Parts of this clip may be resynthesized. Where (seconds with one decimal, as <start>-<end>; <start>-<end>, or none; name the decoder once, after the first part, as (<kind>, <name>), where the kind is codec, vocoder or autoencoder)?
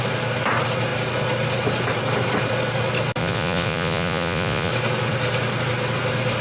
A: 3.2-4.7 (vocoder, Vocos)